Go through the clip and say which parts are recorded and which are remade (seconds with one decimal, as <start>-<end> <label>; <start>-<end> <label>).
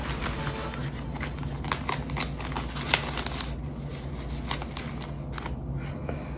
0.0-6.4 recorded